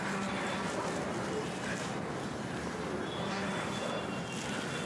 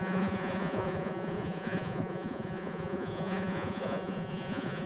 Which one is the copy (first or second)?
second